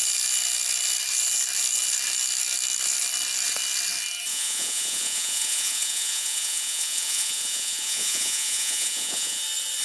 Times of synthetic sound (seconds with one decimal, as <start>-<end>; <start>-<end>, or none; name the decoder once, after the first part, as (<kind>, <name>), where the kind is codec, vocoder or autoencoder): 4.3-9.4 (vocoder, Vocos)